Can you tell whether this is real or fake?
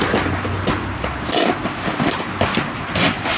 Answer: real